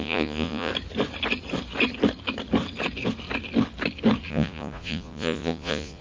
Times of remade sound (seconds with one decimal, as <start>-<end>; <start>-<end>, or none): 0.0-0.7; 4.3-6.0